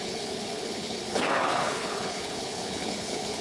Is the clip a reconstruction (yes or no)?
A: yes